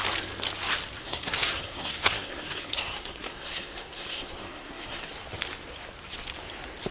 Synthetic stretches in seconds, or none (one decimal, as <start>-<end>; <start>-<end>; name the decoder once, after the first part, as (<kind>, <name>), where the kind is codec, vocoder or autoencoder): 1.0-5.1 (codec, SNAC)